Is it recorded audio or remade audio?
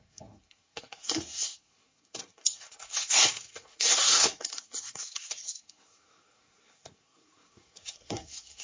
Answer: remade